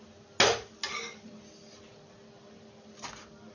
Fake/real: real